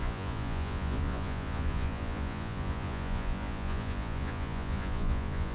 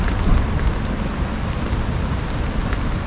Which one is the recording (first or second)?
second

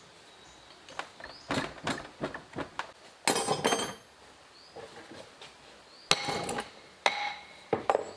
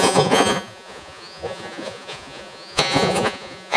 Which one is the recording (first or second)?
first